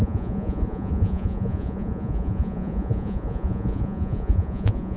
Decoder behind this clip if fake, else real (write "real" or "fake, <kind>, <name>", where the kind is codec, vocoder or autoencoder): fake, vocoder, Vocos